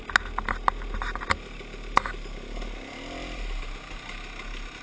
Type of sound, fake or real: real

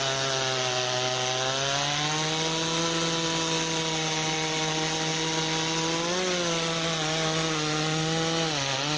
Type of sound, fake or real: real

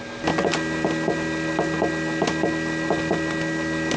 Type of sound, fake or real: real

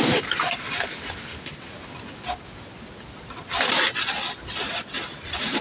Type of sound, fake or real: real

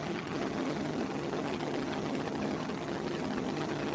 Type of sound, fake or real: fake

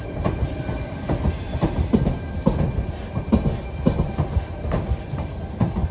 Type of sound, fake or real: real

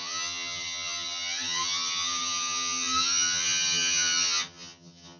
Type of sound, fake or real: fake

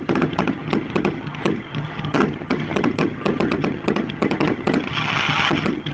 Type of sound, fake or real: fake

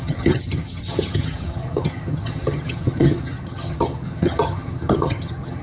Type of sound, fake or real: fake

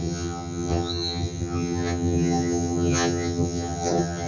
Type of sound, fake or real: fake